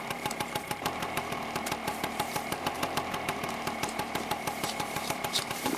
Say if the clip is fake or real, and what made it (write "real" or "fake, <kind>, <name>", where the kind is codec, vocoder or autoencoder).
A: fake, vocoder, BigVGAN v2